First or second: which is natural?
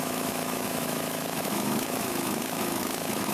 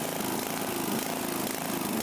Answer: second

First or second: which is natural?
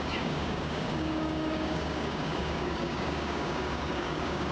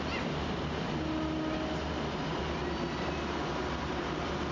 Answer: second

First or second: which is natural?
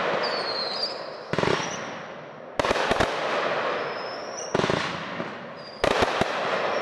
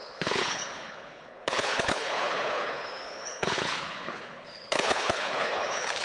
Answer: first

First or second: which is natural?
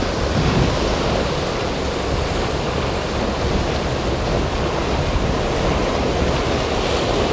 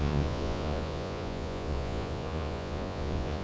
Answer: first